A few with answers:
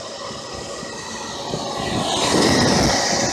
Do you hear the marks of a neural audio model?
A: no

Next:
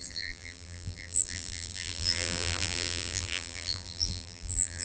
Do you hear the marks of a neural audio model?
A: yes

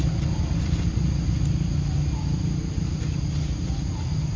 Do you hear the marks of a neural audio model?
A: no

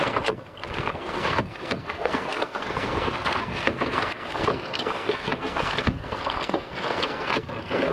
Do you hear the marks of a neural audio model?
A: yes